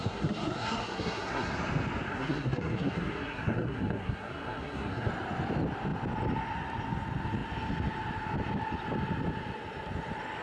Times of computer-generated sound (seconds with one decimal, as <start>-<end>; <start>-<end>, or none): 0.0-1.5; 2.1-5.1